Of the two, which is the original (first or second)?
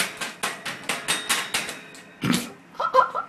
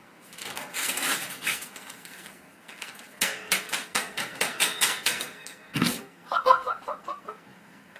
first